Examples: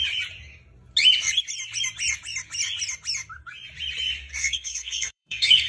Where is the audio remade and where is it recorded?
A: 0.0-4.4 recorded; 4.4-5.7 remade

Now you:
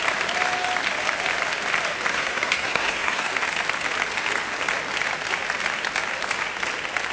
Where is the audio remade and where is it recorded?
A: 0.0-2.1 recorded; 2.1-3.3 remade; 3.3-7.1 recorded

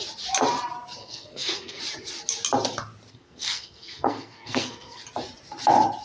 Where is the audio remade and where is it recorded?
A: 0.0-1.0 recorded; 1.0-1.8 remade; 1.8-3.1 recorded; 3.1-5.0 remade; 5.0-6.0 recorded

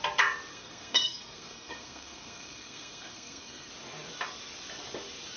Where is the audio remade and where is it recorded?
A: 0.0-0.5 recorded; 0.5-3.7 remade; 3.7-5.4 recorded

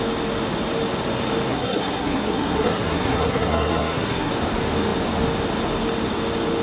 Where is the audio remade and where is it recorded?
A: 0.0-1.5 recorded; 1.5-4.3 remade; 4.3-6.6 recorded